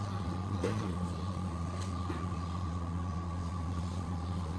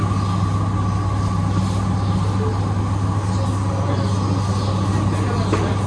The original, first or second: second